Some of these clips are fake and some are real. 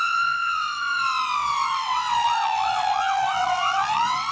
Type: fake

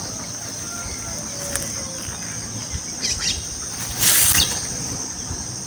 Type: real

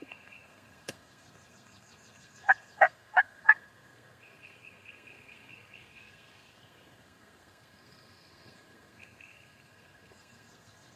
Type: fake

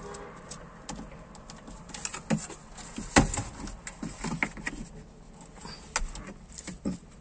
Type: real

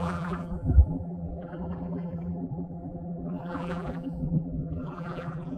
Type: fake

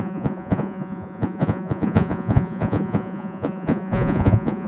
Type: fake